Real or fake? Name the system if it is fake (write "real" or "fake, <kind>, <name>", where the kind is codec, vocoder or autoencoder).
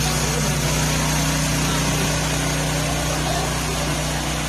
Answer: real